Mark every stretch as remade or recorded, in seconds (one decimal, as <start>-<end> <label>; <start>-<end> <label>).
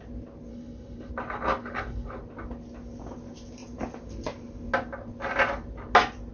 0.0-0.5 recorded; 0.5-1.1 remade; 1.1-1.6 recorded; 1.6-2.2 remade; 2.2-6.3 recorded